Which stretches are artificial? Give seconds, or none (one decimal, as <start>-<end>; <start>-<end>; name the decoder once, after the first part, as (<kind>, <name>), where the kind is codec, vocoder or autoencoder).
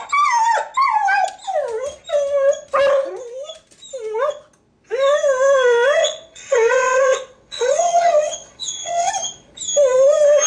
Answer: 6.0-9.1 (vocoder, WaveNeXt)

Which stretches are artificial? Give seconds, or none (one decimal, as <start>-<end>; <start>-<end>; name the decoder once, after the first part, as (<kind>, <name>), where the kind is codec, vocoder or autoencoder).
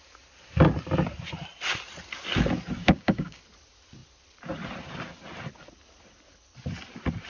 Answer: 2.8-3.4 (codec, DAC)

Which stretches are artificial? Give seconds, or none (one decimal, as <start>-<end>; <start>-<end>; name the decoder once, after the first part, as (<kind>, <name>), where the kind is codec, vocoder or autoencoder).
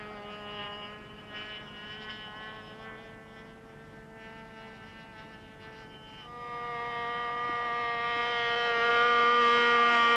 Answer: 0.6-2.1 (vocoder, BigVGAN v2)